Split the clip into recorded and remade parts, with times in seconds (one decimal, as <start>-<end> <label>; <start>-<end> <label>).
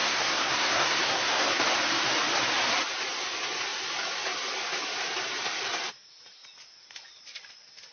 0.0-1.6 remade; 1.6-7.9 recorded